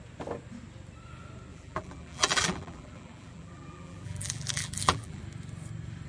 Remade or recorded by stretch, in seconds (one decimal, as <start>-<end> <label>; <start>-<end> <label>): 0.0-1.5 recorded; 1.5-5.2 remade; 5.2-6.1 recorded